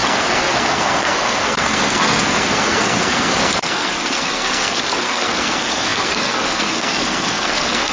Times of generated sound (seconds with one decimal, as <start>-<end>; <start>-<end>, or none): 0.0-7.9